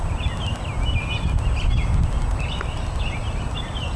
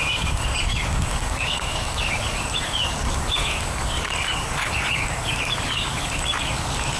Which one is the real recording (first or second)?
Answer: first